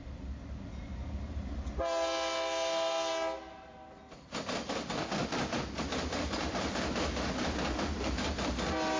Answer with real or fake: real